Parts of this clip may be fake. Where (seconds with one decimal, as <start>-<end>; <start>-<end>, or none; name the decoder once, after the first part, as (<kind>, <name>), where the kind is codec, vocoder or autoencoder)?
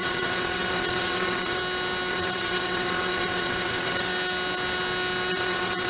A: 0.0-1.6 (vocoder, WaveNeXt); 2.1-4.1; 5.3-5.9